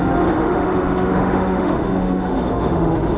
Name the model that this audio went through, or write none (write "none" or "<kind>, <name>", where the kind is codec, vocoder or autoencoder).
autoencoder, DAC-VAE